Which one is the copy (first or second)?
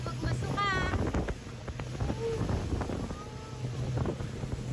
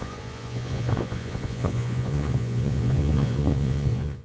second